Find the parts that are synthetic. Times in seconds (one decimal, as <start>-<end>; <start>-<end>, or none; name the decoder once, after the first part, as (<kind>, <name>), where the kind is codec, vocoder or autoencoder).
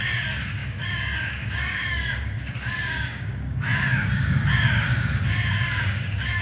0.0-6.4 (codec, DAC)